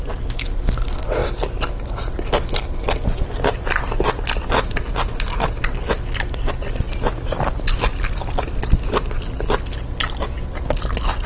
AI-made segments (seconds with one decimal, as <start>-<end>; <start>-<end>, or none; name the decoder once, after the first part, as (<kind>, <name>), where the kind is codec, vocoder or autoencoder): none